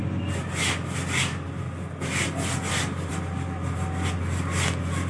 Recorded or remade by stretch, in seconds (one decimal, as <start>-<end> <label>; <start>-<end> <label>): 0.0-5.1 recorded